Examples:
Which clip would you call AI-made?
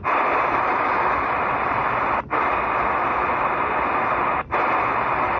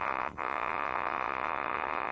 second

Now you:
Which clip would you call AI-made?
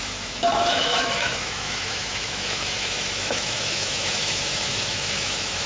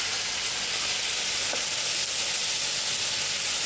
first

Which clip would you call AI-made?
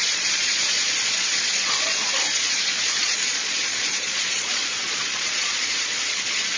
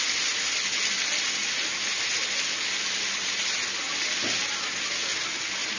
first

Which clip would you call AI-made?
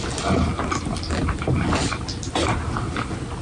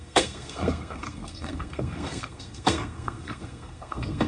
second